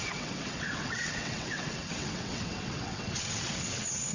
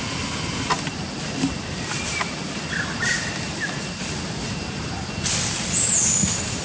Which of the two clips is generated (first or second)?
first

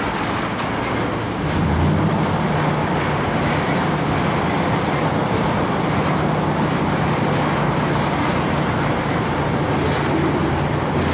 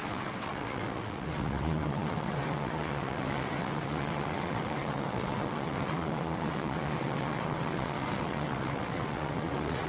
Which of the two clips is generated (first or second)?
second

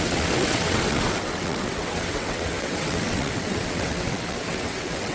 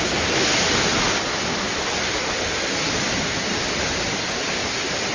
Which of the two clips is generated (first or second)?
first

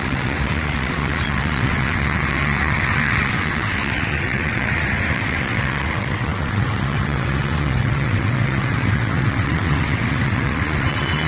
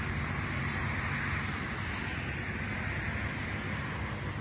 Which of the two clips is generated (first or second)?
first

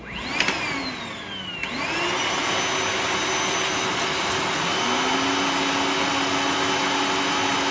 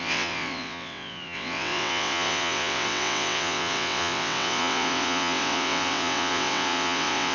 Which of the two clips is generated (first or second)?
second